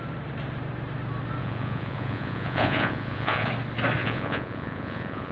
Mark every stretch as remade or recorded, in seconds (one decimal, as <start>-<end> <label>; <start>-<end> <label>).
0.0-1.4 recorded; 1.4-3.5 remade; 3.5-4.0 recorded; 4.0-5.3 remade